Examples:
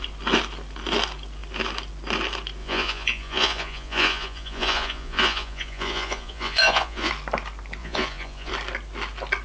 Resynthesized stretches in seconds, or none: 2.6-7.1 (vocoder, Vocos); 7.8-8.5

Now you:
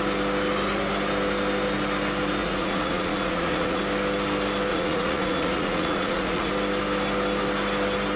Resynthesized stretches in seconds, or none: 2.4-3.8 (vocoder, Vocos); 4.7-6.5

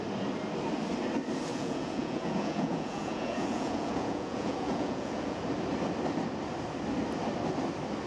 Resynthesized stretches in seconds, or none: 1.5-5.4 (vocoder, Vocos)